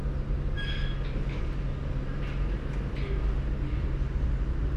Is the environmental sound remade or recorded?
recorded